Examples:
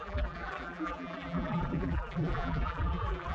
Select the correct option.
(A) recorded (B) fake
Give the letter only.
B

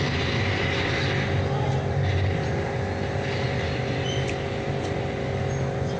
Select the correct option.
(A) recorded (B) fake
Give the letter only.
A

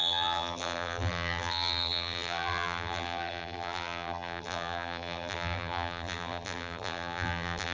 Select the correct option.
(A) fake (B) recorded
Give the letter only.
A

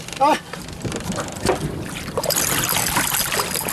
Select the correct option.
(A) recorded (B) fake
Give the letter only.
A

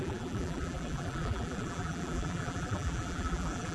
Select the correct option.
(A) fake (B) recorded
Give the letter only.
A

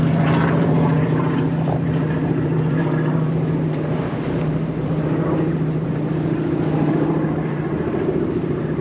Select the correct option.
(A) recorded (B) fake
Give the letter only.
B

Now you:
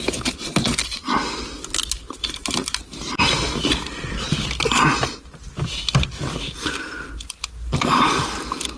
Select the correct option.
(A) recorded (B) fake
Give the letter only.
A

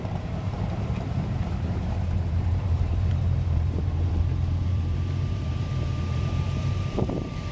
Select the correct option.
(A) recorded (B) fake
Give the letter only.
B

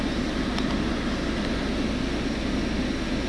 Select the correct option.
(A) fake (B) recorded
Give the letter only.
B